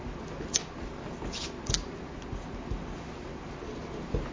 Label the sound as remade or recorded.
recorded